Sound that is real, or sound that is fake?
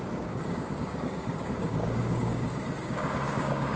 fake